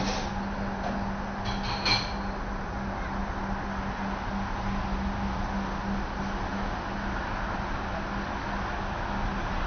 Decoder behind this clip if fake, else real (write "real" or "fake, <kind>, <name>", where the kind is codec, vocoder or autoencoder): real